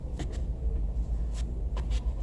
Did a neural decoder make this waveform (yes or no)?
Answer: no